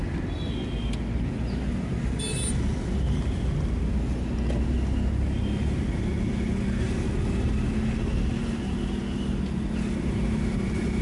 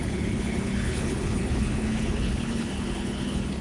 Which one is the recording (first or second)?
first